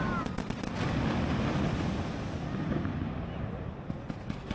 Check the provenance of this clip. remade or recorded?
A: recorded